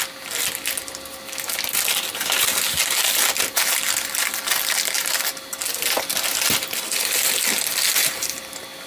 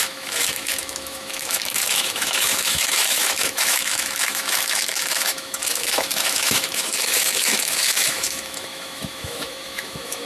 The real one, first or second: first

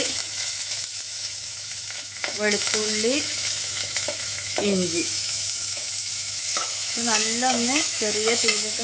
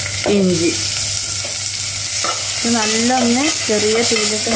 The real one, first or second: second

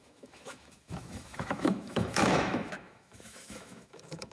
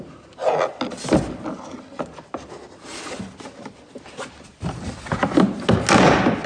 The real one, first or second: second